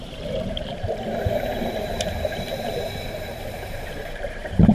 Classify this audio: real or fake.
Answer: fake